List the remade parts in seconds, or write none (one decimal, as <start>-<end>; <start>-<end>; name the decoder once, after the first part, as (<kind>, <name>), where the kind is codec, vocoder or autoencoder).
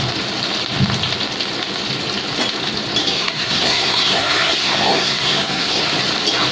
3.0-5.8 (codec, SNAC)